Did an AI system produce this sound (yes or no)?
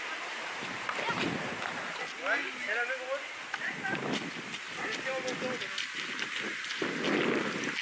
no